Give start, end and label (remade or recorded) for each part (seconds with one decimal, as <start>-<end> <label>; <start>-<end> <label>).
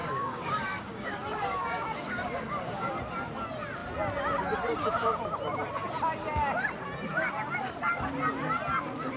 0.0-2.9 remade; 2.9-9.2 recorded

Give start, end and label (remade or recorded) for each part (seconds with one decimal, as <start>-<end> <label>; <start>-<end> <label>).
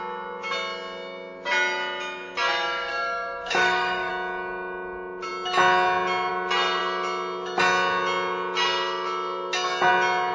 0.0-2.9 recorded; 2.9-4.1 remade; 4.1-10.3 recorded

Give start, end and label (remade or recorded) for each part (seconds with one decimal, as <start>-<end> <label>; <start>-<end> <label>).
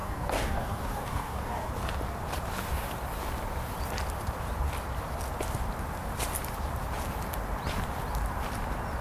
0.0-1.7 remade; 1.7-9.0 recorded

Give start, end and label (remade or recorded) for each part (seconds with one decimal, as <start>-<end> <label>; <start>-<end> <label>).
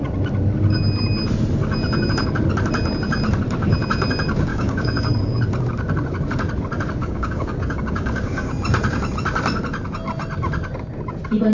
0.0-4.5 recorded; 4.5-5.4 remade; 5.4-7.0 recorded; 7.0-8.5 remade; 8.5-11.5 recorded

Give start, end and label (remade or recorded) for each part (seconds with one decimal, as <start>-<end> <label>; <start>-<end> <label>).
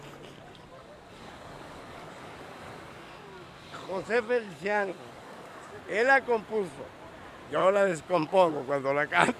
0.0-0.8 recorded; 0.8-5.8 remade; 5.8-7.6 recorded; 7.6-8.5 remade; 8.5-9.4 recorded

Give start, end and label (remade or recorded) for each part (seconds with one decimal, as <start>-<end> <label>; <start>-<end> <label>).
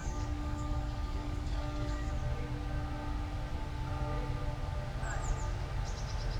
0.0-2.1 remade; 2.1-6.4 recorded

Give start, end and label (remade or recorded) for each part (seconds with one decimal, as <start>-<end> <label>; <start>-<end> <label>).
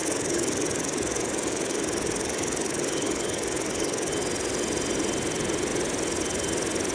0.0-4.1 remade; 4.1-6.9 recorded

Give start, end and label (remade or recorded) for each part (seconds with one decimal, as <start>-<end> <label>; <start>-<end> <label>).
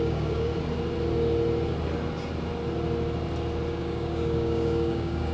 0.0-0.5 remade; 0.5-3.7 recorded; 3.7-5.3 remade